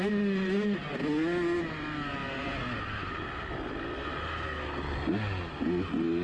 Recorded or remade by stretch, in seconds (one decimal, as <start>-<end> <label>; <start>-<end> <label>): 0.0-6.2 recorded